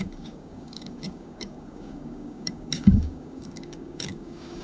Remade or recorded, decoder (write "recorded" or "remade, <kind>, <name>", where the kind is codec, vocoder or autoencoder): remade, codec, DAC